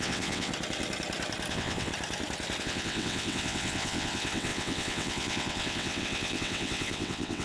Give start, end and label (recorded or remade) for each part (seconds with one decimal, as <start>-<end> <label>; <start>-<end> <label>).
0.0-0.5 remade; 0.5-1.5 recorded; 1.5-1.9 remade; 1.9-2.6 recorded; 2.6-7.4 remade